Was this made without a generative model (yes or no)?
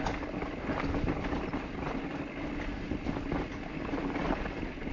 yes